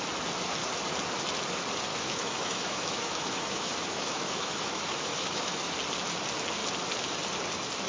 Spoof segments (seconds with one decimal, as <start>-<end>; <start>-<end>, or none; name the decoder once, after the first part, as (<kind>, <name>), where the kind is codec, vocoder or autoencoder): 1.9-5.7 (autoencoder, DAC-VAE)